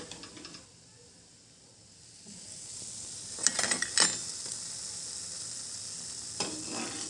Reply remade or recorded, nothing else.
recorded